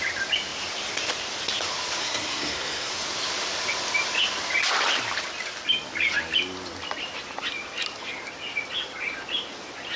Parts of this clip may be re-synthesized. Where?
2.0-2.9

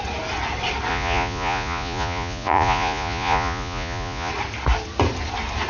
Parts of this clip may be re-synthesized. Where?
0.9-4.3

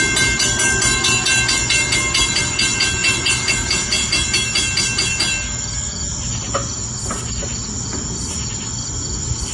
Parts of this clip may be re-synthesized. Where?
3.0-4.1

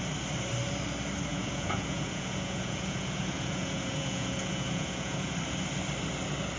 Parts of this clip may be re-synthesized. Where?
1.3-5.3

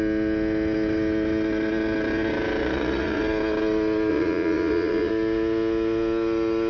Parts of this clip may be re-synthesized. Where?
2.6-3.2; 4.1-5.1

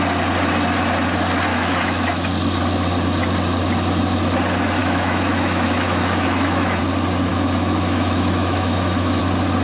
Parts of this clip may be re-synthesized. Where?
1.5-2.3; 4.8-6.8; 7.3-9.2